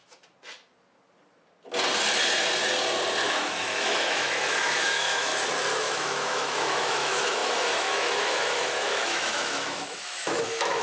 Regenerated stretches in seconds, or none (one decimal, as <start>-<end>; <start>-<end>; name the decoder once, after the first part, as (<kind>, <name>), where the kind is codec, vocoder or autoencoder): 3.3-5.3 (autoencoder, DAC-VAE); 5.8-10.8